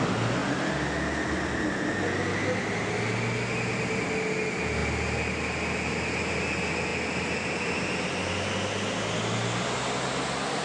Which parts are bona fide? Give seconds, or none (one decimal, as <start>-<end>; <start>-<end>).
0.0-10.6